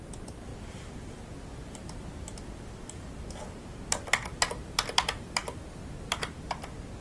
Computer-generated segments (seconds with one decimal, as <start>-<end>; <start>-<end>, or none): 4.6-5.8